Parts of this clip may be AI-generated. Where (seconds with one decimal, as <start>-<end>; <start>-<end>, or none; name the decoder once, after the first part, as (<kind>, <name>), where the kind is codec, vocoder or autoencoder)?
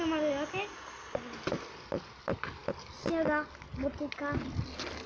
none